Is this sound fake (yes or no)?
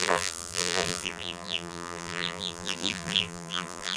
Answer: yes